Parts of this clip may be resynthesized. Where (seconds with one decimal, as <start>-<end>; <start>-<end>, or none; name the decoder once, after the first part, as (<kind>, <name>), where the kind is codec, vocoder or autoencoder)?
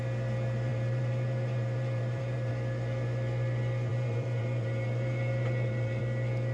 0.7-2.5 (vocoder, BigVGAN v2); 3.9-6.0